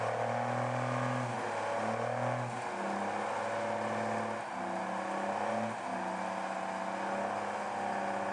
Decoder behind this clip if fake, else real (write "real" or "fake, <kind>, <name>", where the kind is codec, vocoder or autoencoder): real